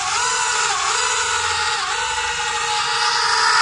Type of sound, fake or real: real